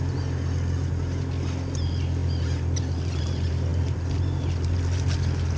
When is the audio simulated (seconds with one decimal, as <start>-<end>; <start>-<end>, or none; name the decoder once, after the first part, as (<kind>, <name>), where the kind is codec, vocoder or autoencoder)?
none